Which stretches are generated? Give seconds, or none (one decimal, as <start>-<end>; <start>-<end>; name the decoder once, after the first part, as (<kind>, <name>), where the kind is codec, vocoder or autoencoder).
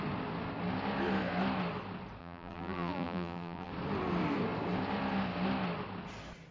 2.2-3.7 (vocoder, BigVGAN v2)